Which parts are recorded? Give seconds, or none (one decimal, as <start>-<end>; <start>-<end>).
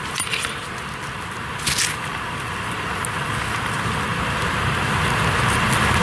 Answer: 0.0-6.0